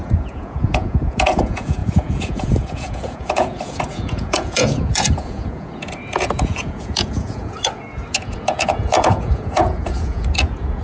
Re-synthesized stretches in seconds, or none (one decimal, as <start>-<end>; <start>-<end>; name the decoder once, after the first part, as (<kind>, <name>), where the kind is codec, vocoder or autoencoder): 0.0-10.8 (vocoder, Vocos)